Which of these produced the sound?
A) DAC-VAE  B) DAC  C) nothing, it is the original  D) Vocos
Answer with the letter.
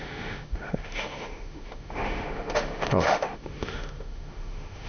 A